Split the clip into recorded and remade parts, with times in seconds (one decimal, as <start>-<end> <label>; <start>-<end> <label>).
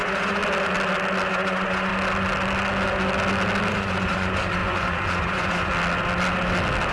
0.0-0.4 remade; 0.4-1.3 recorded; 1.3-1.9 remade; 1.9-3.7 recorded; 3.7-5.7 remade; 5.7-6.9 recorded